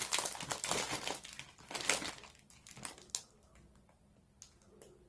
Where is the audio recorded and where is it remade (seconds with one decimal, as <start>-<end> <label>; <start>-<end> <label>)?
0.0-5.1 recorded